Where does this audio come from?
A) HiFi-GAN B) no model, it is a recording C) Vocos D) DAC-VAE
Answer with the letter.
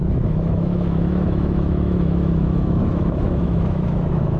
D